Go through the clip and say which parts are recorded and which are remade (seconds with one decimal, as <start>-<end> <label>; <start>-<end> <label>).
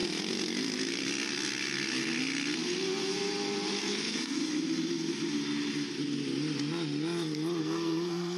0.0-3.8 recorded; 3.8-4.4 remade; 4.4-7.6 recorded; 7.6-8.4 remade